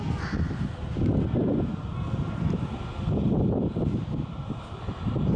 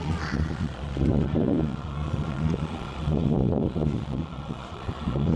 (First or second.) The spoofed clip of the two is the second